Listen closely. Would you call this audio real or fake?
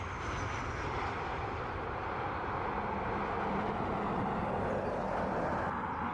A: real